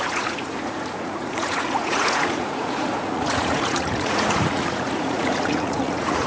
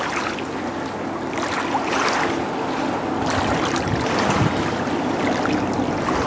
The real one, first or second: second